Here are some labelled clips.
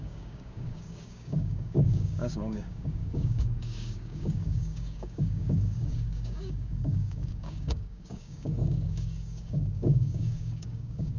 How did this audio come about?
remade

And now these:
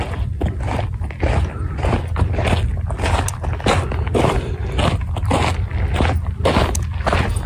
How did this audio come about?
recorded